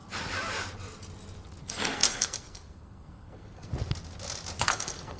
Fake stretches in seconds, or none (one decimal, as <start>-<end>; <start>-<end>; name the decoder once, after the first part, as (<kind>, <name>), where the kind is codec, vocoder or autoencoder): 1.6-3.7 (codec, SNAC); 4.6-5.2